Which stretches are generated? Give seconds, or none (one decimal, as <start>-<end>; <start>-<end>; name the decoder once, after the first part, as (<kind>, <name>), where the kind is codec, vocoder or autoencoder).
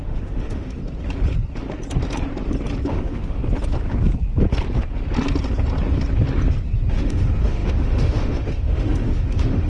0.0-0.8 (autoencoder, DAC-VAE); 2.9-3.4; 6.9-9.7